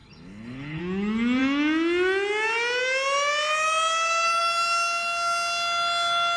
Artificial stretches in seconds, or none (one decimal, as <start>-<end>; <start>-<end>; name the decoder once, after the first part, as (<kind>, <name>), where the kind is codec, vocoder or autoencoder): 0.0-0.8 (codec, HILCodec)